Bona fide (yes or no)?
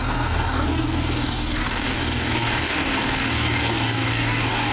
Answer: no